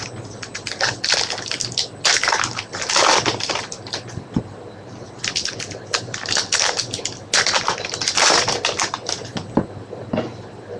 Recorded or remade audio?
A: recorded